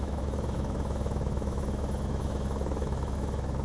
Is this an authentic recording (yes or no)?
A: no